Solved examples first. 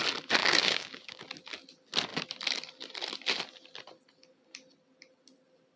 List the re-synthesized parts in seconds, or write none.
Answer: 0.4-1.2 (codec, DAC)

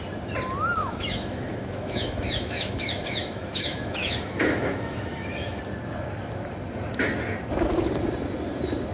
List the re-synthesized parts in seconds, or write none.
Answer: 0.8-5.6 (autoencoder, DAC-VAE)